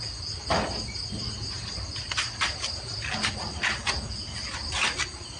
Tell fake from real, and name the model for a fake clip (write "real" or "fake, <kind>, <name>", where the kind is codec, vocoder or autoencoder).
real